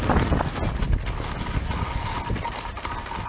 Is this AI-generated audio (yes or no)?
no